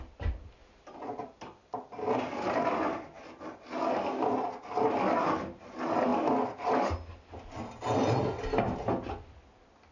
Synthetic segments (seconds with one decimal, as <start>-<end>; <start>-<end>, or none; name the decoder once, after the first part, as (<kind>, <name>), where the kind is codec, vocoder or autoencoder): none